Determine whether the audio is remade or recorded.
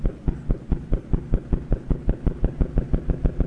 recorded